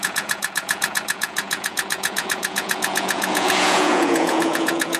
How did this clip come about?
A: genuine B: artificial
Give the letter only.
B